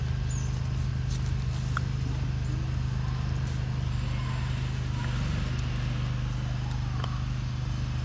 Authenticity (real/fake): real